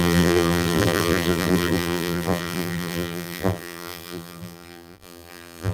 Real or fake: fake